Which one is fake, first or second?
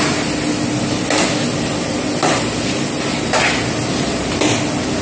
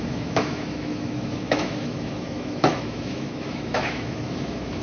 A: second